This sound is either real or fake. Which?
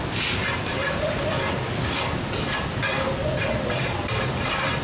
real